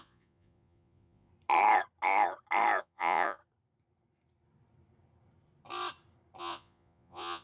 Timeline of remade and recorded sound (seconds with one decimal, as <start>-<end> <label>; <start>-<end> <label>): 0.0-1.3 remade; 1.3-2.8 recorded; 2.8-3.4 remade; 3.4-6.4 recorded; 6.4-7.4 remade